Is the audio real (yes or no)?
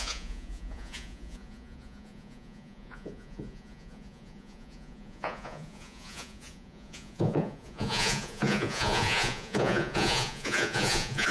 no